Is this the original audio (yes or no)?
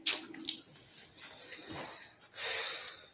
yes